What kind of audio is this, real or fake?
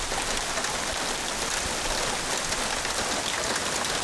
real